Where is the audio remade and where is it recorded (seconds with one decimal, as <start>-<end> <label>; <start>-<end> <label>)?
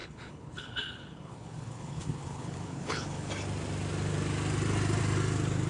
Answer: 0.0-3.3 remade; 3.3-5.7 recorded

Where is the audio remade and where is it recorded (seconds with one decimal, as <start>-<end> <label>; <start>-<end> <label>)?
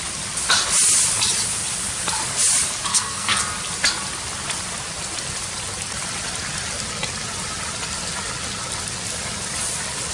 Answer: 0.0-2.9 recorded; 2.9-3.4 remade; 3.4-10.1 recorded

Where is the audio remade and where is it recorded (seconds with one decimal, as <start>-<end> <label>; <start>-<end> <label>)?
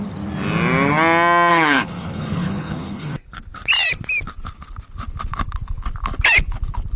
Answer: 0.0-1.5 recorded; 1.5-3.1 remade; 3.1-7.0 recorded